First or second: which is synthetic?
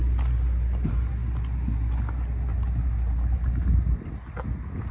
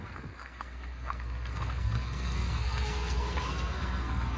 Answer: second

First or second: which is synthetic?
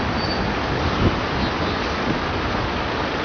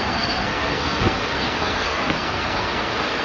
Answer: second